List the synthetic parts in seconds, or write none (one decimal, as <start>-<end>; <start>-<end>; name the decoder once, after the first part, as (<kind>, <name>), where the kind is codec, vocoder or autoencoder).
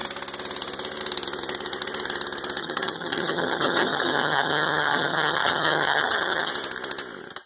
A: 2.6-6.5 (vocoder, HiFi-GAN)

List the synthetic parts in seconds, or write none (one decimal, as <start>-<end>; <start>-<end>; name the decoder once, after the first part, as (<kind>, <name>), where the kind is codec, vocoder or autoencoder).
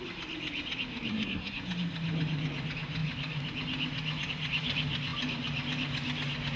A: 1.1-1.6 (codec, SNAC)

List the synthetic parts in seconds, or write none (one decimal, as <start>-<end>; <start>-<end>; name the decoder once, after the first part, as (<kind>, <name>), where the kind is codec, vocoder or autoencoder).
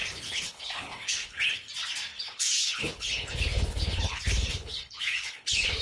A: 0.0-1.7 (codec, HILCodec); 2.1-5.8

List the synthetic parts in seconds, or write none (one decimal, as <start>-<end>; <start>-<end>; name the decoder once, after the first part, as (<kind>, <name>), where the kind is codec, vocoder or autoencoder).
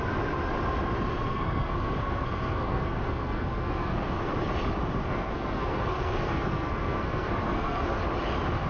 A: 1.3-4.3 (codec, SNAC); 5.0-8.0